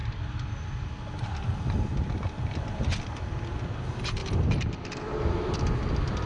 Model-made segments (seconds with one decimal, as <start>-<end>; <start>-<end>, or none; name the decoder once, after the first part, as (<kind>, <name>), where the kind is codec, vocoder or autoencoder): none